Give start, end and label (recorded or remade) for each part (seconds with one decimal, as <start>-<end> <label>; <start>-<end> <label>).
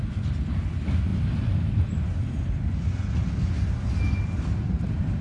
0.0-5.2 recorded